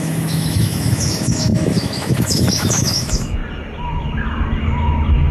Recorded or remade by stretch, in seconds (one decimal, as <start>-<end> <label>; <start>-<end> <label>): 0.0-3.4 remade; 3.4-5.3 recorded